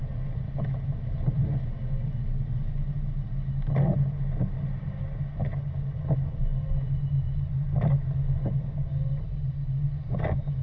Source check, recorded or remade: recorded